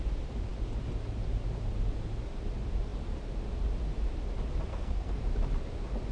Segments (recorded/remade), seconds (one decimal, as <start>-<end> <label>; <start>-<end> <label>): 0.0-4.7 recorded; 4.7-5.2 remade; 5.2-6.1 recorded